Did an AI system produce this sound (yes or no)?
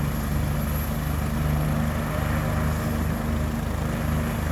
no